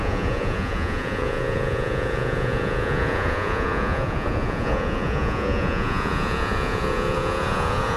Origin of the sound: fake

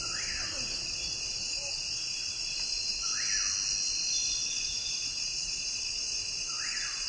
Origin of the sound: real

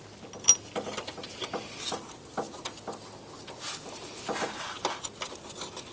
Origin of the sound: real